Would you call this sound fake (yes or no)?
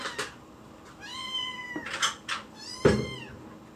no